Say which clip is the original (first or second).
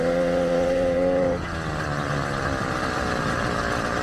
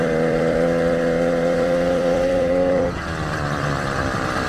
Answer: first